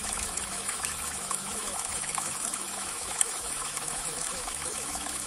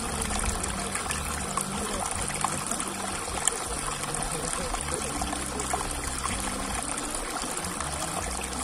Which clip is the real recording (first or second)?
second